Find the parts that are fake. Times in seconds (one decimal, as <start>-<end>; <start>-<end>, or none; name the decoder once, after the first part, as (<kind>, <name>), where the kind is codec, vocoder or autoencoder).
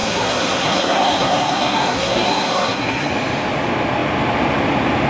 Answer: 0.0-3.1 (codec, SNAC)